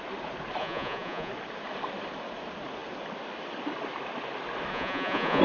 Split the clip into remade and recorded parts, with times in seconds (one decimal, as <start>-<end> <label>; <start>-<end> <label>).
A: 0.0-0.6 recorded; 0.6-1.3 remade; 1.3-4.7 recorded; 4.7-5.4 remade